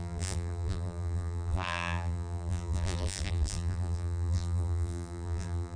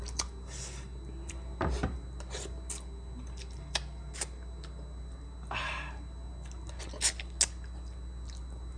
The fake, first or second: first